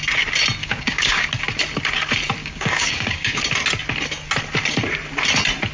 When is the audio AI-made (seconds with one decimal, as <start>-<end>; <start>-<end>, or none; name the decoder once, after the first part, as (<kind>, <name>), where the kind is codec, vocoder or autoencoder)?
0.6-1.3 (codec, DAC); 2.4-3.4